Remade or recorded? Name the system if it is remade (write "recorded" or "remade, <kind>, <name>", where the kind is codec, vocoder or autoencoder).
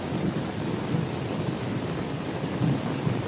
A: recorded